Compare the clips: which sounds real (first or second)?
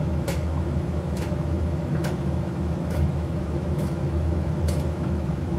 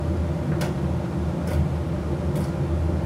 second